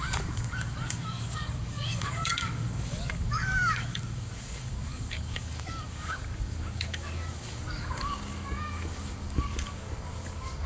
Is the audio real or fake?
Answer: fake